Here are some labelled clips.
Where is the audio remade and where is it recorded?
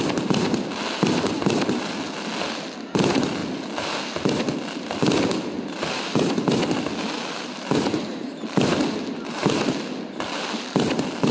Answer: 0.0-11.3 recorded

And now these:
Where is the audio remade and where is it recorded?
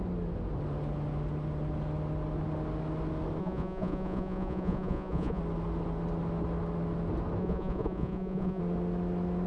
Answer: 0.0-3.4 recorded; 3.4-5.4 remade; 5.4-7.4 recorded; 7.4-8.6 remade; 8.6-9.5 recorded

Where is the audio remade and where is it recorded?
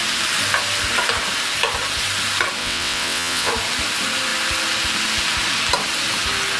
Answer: 0.0-2.6 recorded; 2.6-3.5 remade; 3.5-6.6 recorded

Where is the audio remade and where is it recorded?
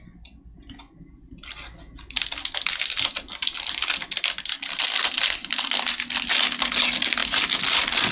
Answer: 0.0-8.1 recorded